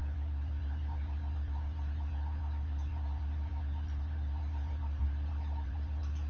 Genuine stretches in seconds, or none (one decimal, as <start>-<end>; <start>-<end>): none